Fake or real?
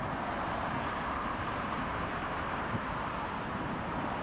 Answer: fake